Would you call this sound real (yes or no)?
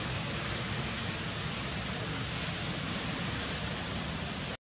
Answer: yes